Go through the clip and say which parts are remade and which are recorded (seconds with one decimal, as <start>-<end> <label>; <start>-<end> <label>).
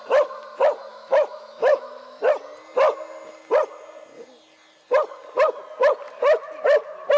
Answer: 0.0-0.9 recorded; 0.9-2.2 remade; 2.2-7.2 recorded